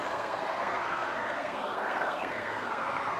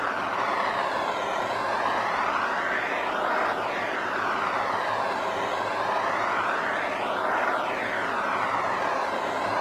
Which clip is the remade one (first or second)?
first